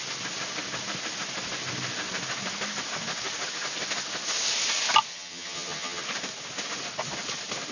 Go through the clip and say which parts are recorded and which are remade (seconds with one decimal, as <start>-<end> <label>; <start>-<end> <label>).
0.0-5.1 recorded; 5.1-6.0 remade; 6.0-7.7 recorded